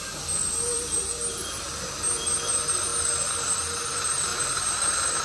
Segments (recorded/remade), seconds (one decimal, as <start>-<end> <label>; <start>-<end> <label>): 0.0-0.5 recorded; 0.5-1.7 remade; 1.7-4.3 recorded; 4.3-5.2 remade